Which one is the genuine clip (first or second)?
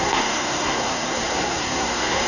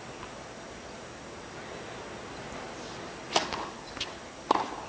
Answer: second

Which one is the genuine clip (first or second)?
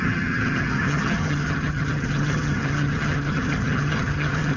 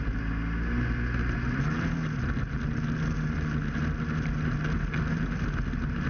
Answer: second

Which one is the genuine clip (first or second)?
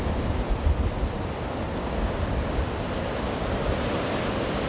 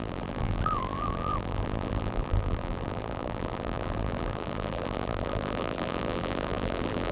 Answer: first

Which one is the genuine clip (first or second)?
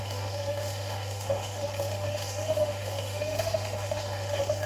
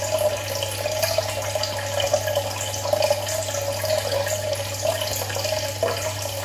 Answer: second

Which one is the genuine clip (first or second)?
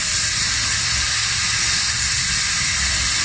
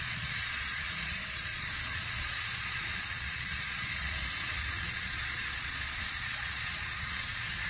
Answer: first